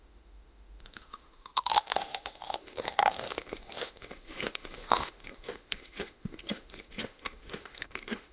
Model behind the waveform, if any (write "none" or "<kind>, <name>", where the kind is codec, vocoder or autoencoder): autoencoder, DAC-VAE